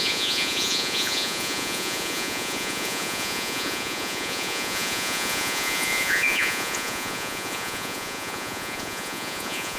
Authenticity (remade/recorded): remade